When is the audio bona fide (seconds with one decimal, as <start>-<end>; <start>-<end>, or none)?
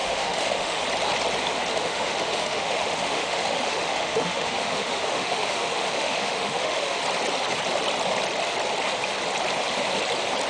0.8-1.7; 7.0-10.5